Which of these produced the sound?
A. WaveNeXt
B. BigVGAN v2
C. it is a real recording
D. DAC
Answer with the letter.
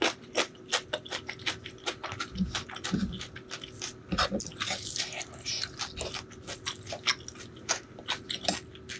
C